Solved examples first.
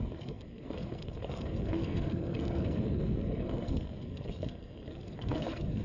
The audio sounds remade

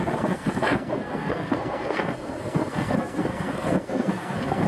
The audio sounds remade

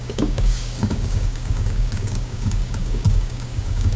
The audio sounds remade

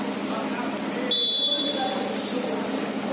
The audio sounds recorded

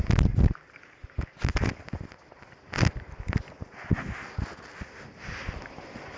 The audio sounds recorded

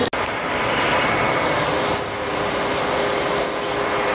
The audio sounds recorded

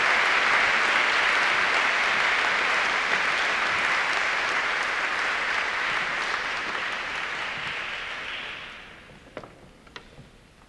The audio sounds recorded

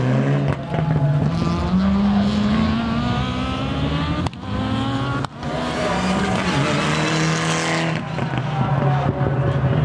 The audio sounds recorded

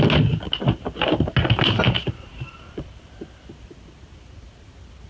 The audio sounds recorded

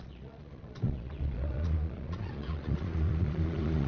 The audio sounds remade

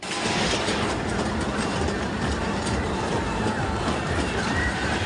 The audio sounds remade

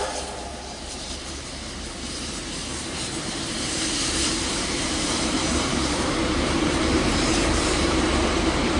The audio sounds remade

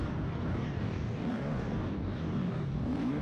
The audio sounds remade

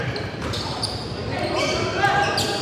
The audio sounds recorded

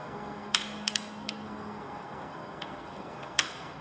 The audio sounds remade